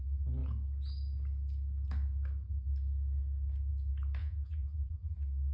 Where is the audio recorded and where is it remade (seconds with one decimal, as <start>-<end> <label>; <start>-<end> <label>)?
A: 0.0-4.2 recorded; 4.2-5.0 remade; 5.0-5.5 recorded